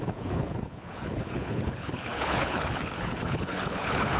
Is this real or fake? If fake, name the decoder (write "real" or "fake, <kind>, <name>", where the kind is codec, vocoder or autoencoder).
fake, codec, HILCodec